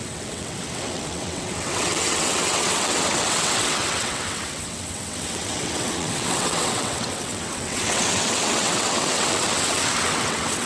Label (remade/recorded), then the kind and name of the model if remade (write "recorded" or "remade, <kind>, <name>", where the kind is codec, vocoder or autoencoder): remade, vocoder, WaveNeXt